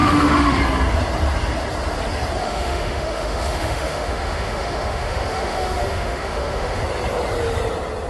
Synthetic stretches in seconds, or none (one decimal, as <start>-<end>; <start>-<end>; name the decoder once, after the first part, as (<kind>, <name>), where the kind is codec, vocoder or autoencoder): 0.0-0.6 (autoencoder, DAC-VAE); 2.4-6.8